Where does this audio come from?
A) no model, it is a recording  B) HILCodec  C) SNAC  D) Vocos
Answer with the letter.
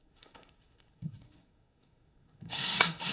C